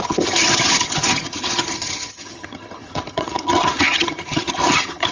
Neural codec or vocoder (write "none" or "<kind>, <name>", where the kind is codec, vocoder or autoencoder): vocoder, HiFi-GAN